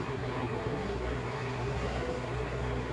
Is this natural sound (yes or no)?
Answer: no